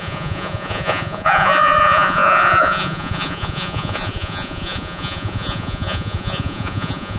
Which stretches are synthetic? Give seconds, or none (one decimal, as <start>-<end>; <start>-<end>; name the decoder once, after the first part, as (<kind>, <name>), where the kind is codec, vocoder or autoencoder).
0.0-7.2 (vocoder, Vocos)